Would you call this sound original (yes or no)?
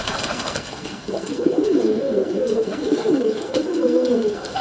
no